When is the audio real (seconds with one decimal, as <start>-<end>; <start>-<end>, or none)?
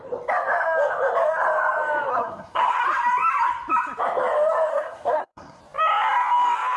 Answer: 0.0-2.1; 2.7-4.7; 5.6-6.8